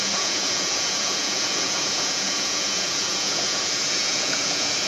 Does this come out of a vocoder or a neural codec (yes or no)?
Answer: yes